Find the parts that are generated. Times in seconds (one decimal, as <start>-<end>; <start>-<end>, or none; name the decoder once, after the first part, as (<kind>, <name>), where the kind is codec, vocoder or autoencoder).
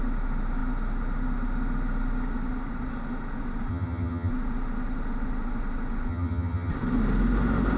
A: 3.7-4.3 (vocoder, HiFi-GAN); 6.1-6.7